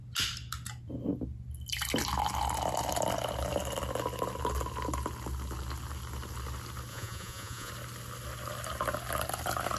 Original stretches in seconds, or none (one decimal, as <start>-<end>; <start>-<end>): 0.0-6.9; 7.7-9.8